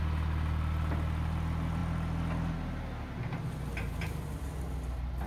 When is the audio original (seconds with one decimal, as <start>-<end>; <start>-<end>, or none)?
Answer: 0.0-5.3